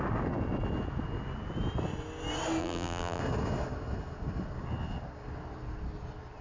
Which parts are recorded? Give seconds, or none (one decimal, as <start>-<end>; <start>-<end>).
0.0-2.6; 3.2-6.4